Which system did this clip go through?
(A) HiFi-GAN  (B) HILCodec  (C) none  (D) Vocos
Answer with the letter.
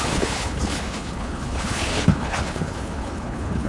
B